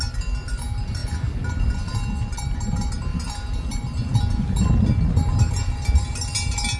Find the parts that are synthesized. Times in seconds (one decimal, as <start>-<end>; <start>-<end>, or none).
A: none